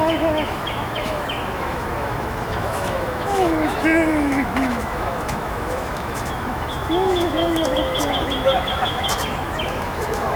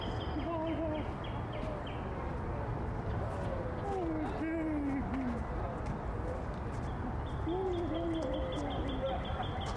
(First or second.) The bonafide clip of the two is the second